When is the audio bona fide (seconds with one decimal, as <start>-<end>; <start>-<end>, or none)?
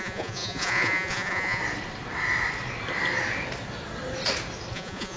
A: 1.6-4.7